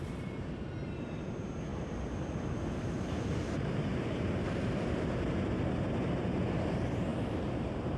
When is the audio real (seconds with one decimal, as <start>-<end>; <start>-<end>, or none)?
0.0-1.7; 5.2-8.0